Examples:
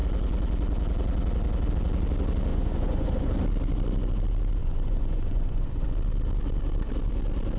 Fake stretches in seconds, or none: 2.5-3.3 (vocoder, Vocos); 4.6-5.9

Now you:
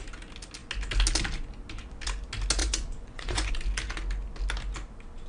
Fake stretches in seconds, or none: 2.6-3.5 (vocoder, Vocos)

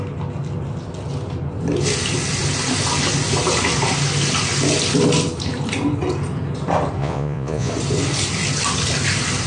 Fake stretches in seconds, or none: 7.0-7.7 (vocoder, Vocos)

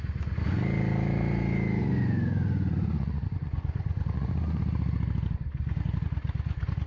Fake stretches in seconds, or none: 1.8-4.6 (vocoder, Vocos)

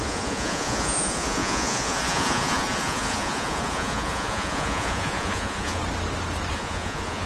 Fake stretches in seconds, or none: 0.0-5.8 (vocoder, Vocos); 6.5-7.3

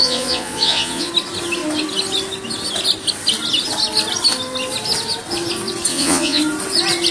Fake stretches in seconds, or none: 0.0-1.1 (vocoder, Vocos); 5.9-6.4

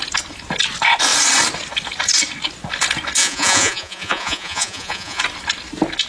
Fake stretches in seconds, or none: 3.2-5.2 (vocoder, Vocos)